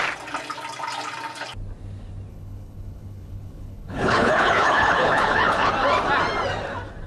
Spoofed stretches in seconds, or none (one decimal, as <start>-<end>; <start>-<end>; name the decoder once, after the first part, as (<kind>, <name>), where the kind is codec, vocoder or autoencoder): 2.3-5.7 (codec, HILCodec)